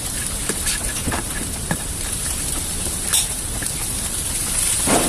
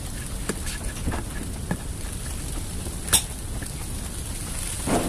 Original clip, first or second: second